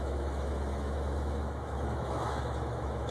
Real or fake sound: fake